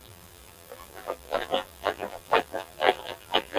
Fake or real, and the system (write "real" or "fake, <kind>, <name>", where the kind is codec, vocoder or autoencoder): fake, vocoder, BigVGAN v2